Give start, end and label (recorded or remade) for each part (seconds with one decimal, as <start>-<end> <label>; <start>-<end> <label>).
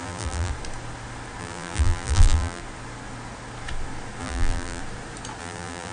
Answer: 0.0-0.5 remade; 0.5-1.4 recorded; 1.4-2.6 remade; 2.6-4.2 recorded; 4.2-4.8 remade; 4.8-5.4 recorded; 5.4-5.9 remade